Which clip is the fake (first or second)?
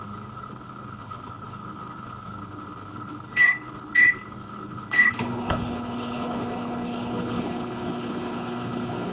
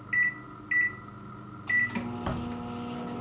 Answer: first